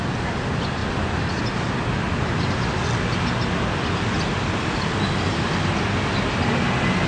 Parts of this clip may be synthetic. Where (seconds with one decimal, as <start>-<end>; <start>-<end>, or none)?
none